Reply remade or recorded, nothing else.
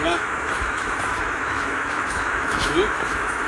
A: remade